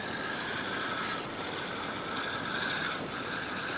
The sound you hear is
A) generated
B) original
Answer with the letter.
B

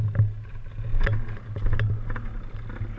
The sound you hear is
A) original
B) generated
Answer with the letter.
A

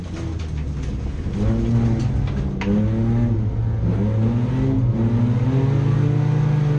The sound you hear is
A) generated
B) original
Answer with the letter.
B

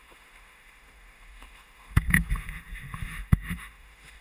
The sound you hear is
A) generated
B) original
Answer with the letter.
A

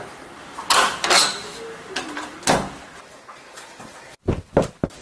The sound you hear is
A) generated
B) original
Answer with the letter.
B